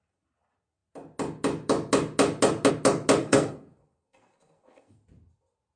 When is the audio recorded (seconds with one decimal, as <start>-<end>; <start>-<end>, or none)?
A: 0.0-3.2; 5.0-5.8